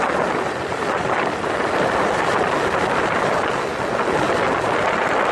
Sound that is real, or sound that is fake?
real